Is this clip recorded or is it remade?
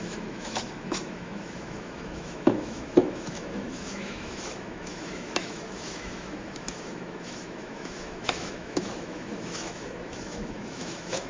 remade